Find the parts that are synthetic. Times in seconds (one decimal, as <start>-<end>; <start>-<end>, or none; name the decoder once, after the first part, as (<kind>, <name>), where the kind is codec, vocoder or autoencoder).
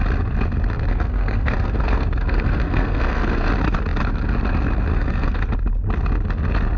0.9-3.5 (codec, SNAC); 4.9-5.4